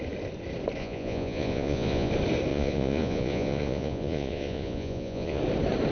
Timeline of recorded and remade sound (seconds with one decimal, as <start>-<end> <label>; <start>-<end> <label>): 0.0-0.8 recorded; 0.8-2.1 remade; 2.1-2.5 recorded; 2.5-5.4 remade; 5.4-5.9 recorded